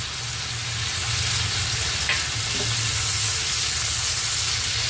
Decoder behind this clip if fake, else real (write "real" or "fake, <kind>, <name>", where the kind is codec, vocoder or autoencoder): real